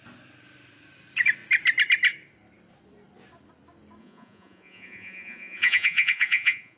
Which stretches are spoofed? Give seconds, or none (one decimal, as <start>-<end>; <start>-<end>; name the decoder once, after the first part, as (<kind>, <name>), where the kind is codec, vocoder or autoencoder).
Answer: 4.0-6.8 (vocoder, Vocos)